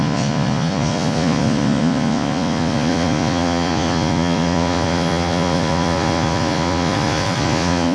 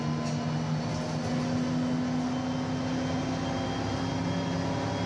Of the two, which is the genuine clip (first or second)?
second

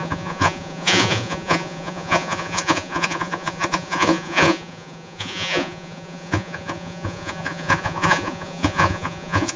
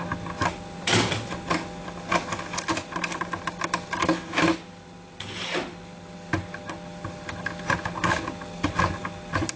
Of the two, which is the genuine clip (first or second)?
second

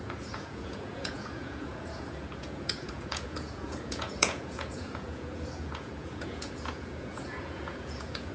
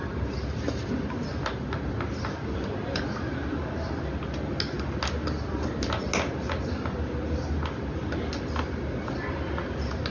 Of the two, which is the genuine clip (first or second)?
second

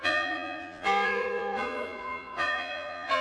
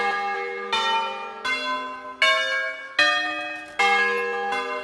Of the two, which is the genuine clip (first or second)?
second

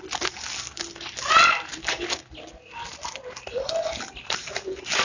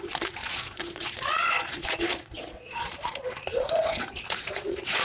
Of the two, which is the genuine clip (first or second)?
first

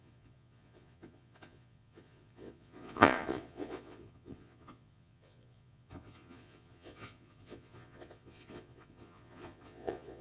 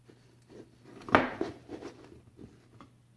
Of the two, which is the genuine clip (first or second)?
second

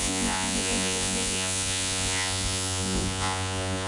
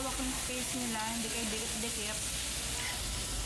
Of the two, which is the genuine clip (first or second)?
second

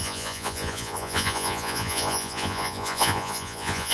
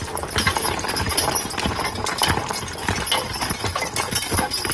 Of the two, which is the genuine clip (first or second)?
second